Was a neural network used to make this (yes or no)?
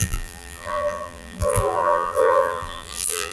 yes